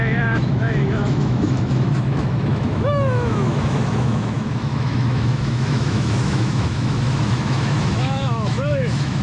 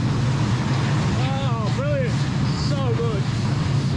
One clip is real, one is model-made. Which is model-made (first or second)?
first